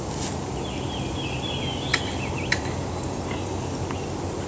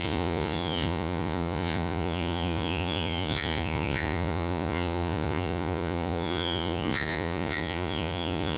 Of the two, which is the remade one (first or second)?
second